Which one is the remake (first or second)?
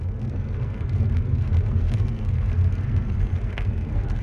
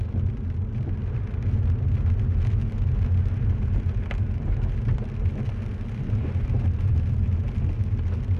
first